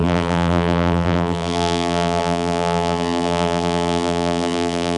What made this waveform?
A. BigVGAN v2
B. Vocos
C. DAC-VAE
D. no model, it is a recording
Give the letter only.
A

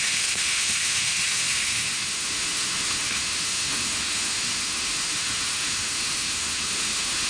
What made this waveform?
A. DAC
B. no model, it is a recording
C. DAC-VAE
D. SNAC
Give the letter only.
C